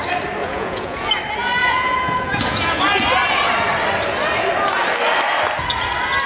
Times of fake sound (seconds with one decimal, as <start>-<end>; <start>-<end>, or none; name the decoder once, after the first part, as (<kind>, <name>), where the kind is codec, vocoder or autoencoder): 0.4-1.1 (vocoder, Vocos); 1.6-2.8